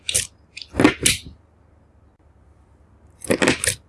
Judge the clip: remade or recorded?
recorded